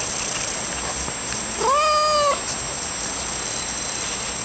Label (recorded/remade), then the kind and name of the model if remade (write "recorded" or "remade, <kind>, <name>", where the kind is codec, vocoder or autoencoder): recorded